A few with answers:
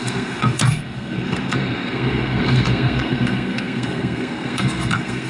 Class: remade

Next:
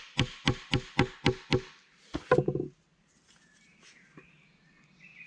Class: recorded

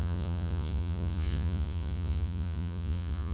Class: remade